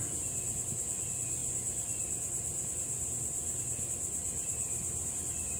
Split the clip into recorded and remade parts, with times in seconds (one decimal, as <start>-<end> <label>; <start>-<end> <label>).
0.0-5.6 recorded

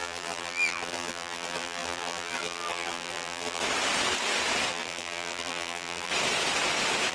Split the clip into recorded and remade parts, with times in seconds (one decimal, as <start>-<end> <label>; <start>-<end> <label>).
0.0-3.6 remade; 3.6-4.7 recorded; 4.7-6.1 remade; 6.1-7.1 recorded